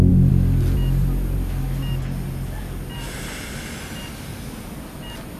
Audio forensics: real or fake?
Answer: real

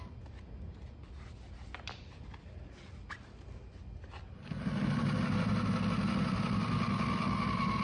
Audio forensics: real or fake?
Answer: real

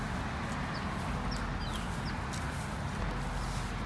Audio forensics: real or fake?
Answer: real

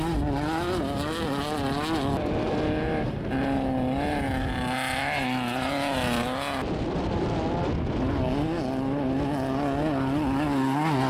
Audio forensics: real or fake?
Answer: real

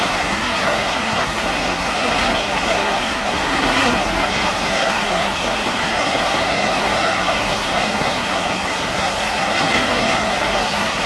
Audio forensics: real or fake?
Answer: fake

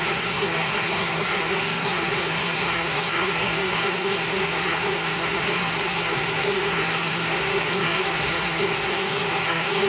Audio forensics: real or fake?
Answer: fake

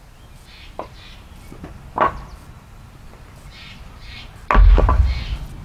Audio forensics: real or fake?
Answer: real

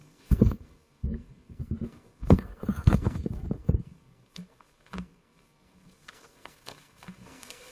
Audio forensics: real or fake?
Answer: fake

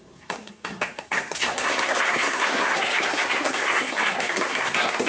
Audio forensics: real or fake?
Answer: fake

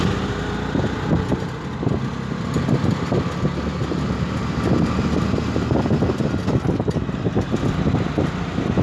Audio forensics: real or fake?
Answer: real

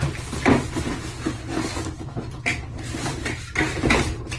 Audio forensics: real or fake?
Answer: real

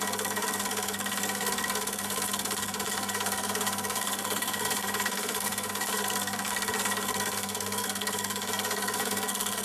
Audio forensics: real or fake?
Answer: fake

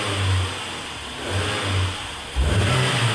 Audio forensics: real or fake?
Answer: real